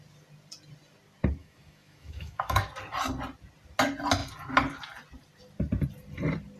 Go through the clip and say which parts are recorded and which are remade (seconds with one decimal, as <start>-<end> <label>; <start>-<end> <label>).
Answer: 0.0-1.4 recorded; 1.4-2.7 remade; 2.7-6.6 recorded